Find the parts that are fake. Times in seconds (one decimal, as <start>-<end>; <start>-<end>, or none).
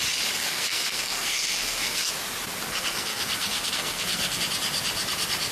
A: 0.4-2.1; 2.7-4.4